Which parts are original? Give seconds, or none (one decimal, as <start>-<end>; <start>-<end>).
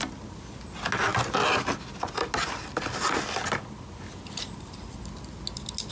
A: 0.0-5.9